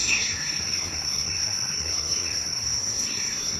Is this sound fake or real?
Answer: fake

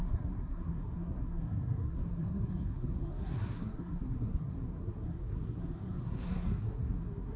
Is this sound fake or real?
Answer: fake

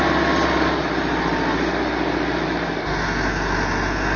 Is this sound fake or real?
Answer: real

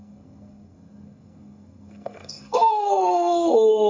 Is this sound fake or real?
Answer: fake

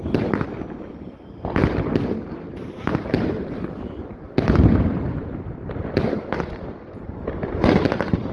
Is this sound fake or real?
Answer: real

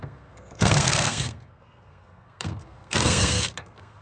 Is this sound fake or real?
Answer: fake